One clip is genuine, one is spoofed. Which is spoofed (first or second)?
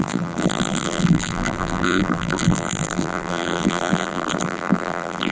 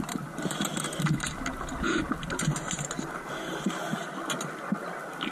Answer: first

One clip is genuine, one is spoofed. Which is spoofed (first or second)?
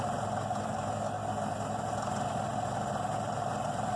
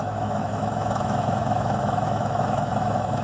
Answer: second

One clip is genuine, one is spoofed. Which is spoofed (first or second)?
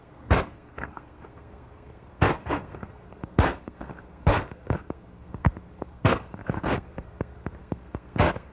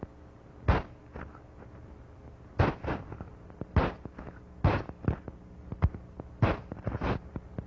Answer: first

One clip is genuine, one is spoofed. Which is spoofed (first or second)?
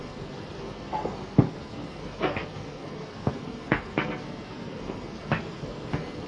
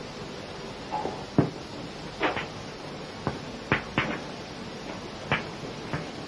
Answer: first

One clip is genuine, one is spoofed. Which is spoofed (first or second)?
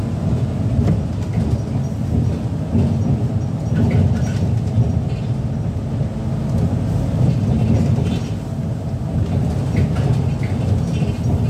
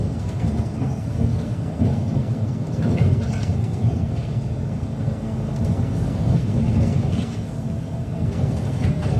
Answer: second